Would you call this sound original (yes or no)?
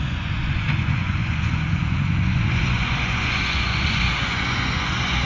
no